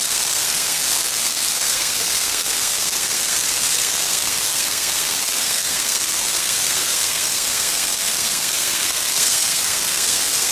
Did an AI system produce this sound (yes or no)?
yes